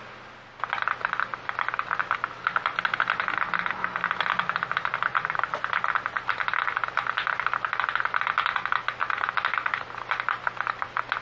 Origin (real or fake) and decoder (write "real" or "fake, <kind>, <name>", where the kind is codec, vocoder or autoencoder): real